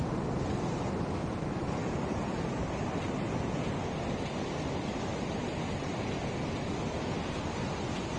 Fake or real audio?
real